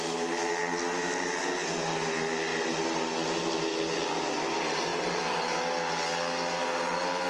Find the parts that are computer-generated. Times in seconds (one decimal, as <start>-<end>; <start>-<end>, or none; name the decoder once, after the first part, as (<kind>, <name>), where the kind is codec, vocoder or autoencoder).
none